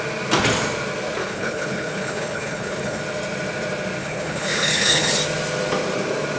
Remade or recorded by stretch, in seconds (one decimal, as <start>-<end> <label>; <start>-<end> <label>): 0.0-1.2 recorded; 1.2-3.0 remade; 3.0-4.0 recorded; 4.0-5.1 remade; 5.1-6.4 recorded